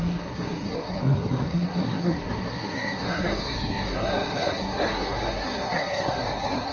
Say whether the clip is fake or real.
fake